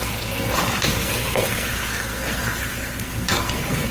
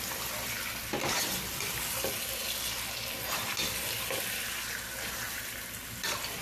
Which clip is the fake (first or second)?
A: first